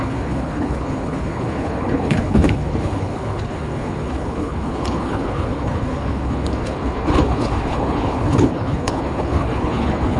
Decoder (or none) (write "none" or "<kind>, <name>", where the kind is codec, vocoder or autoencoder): codec, HILCodec